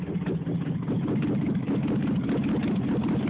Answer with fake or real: real